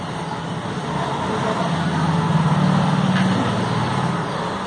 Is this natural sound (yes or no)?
yes